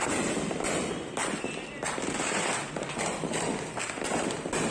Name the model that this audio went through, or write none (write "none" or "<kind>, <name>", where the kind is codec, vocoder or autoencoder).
none